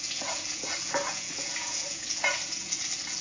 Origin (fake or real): fake